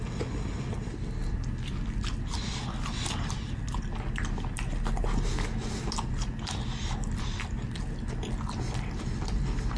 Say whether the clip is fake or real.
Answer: real